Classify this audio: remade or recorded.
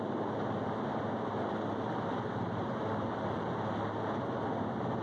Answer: recorded